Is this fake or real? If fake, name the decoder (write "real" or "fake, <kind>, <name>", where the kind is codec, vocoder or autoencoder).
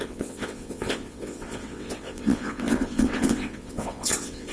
fake, vocoder, WaveNeXt